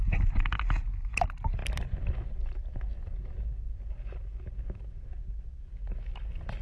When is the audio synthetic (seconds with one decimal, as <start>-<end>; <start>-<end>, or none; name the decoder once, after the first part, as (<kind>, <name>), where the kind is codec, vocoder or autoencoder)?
none